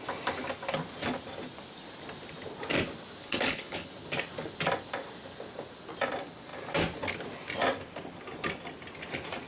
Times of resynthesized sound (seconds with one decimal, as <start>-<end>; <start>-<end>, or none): 3.2-3.9